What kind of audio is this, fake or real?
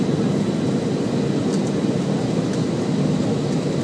real